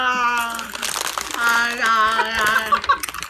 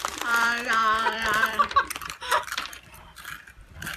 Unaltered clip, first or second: first